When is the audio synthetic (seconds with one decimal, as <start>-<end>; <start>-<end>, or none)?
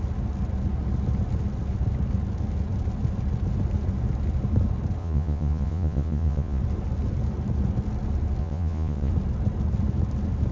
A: 5.0-6.6; 8.4-9.1